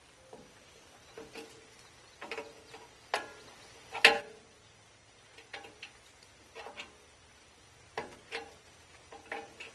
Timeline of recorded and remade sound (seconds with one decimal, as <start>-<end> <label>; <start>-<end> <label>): 0.0-9.7 recorded